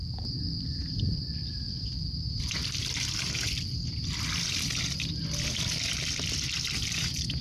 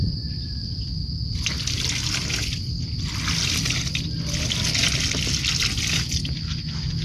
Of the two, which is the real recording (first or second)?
second